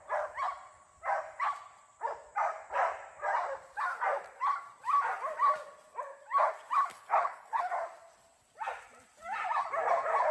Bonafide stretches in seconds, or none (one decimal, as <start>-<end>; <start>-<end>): 0.0-6.9; 7.7-10.3